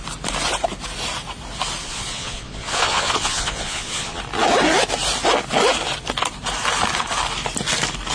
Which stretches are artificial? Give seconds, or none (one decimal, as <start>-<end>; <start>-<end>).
1.8-4.2